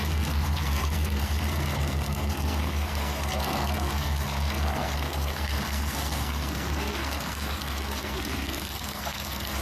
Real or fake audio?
fake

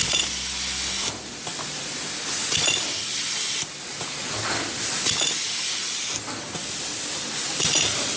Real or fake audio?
real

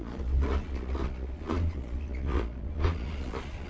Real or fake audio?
fake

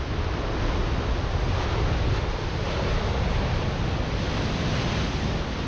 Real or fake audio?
real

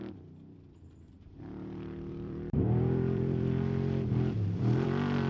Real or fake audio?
fake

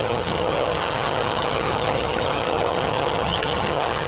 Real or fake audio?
fake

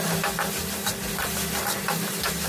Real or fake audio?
real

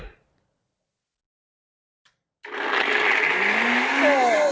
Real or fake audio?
real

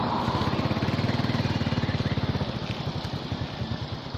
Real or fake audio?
real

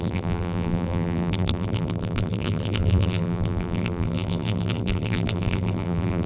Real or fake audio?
fake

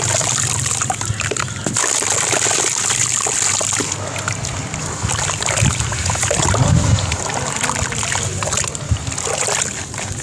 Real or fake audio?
real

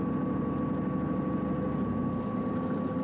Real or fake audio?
real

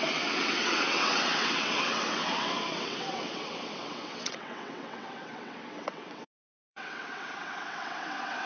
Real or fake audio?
fake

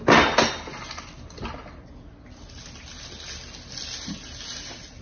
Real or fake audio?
real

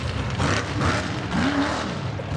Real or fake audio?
fake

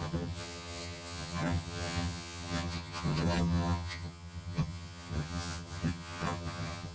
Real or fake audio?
fake